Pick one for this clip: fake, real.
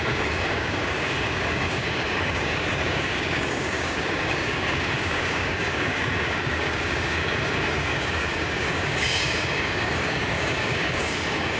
fake